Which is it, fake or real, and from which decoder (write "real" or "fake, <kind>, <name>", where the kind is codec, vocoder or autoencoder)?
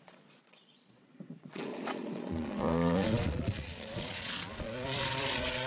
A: fake, vocoder, Vocos